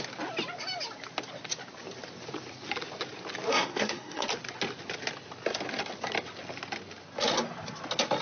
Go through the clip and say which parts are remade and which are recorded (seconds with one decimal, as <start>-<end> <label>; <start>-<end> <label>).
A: 0.0-3.5 recorded; 3.5-4.3 remade; 4.3-8.2 recorded